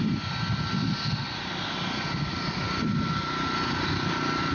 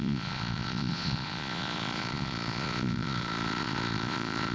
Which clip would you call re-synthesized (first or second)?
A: second